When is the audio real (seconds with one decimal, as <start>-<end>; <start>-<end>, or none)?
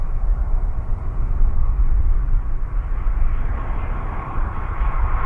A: 0.9-4.1